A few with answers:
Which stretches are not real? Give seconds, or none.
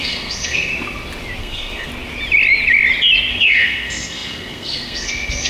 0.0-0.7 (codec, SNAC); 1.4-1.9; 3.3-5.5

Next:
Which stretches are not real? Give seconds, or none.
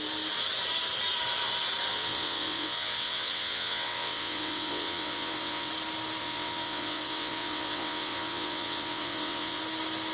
1.9-5.7 (vocoder, WaveNeXt); 6.2-9.6